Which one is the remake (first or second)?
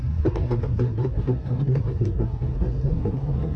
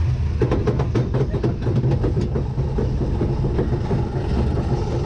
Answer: first